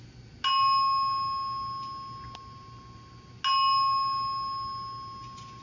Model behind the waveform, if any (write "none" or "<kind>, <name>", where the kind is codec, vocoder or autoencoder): none